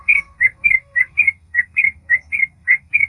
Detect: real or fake fake